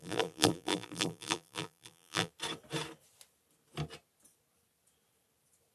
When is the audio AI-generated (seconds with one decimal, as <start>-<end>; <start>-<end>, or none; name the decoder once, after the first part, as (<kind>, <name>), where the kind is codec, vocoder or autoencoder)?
0.0-2.3 (vocoder, BigVGAN v2)